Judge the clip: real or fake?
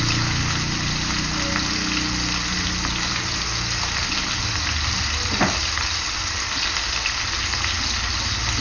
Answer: real